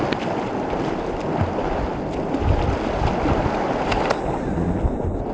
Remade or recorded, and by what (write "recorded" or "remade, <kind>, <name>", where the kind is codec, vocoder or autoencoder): recorded